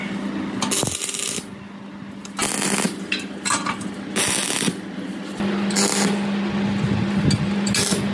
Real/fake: real